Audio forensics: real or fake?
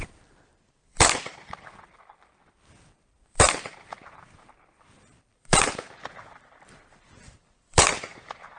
fake